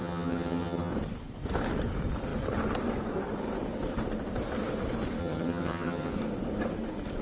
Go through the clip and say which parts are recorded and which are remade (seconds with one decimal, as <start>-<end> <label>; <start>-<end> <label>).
0.0-0.9 remade; 0.9-5.2 recorded; 5.2-6.1 remade; 6.1-7.2 recorded